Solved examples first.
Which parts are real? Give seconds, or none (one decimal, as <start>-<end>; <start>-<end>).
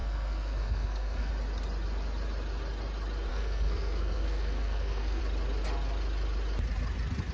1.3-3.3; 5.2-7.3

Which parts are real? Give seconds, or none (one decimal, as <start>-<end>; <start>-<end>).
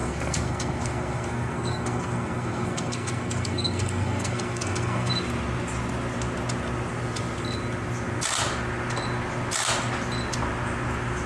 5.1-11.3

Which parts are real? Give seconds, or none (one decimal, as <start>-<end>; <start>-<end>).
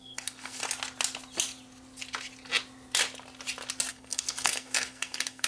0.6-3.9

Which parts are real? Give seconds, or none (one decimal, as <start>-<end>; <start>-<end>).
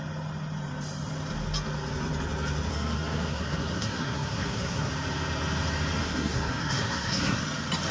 0.0-2.7; 4.9-6.0; 7.4-7.9